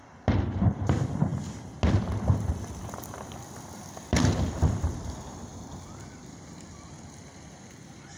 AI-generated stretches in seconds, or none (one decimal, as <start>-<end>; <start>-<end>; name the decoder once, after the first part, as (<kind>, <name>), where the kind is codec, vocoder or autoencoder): 0.0-1.3 (vocoder, BigVGAN v2); 2.0-8.2